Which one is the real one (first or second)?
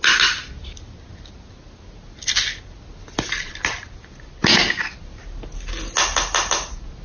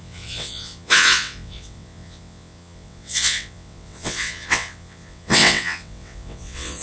first